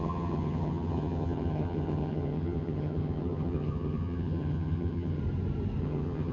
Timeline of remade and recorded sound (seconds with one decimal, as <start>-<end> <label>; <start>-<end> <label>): 0.0-5.2 remade; 5.2-5.8 recorded; 5.8-6.3 remade